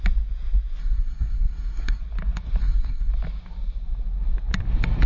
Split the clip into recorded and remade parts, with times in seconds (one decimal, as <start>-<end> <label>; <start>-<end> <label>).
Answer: 0.0-0.8 recorded; 0.8-2.0 remade; 2.0-2.6 recorded; 2.6-3.1 remade; 3.1-5.1 recorded